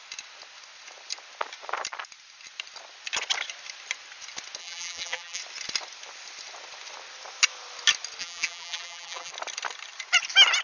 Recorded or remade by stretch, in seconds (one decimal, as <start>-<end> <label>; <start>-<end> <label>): 0.0-4.6 recorded; 4.6-5.4 remade; 5.4-8.2 recorded; 8.2-9.3 remade; 9.3-10.6 recorded